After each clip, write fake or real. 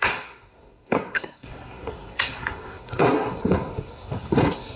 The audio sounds fake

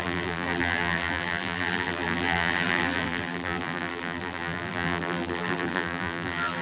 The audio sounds fake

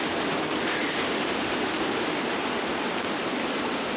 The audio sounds real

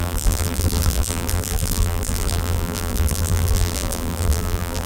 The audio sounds fake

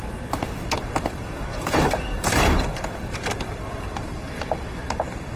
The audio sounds real